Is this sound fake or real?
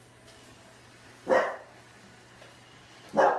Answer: real